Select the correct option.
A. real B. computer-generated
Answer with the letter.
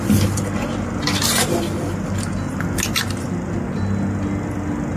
A